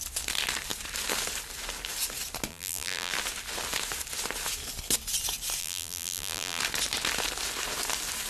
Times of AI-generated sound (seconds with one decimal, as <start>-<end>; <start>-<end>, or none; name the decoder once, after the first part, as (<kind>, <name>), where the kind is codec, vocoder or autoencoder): 2.5-3.1 (vocoder, BigVGAN v2); 5.6-6.6